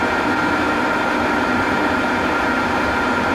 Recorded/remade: remade